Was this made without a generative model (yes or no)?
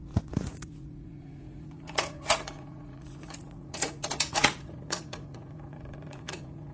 no